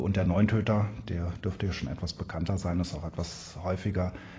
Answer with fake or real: real